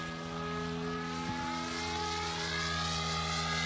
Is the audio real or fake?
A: real